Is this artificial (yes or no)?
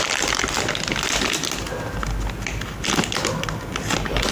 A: no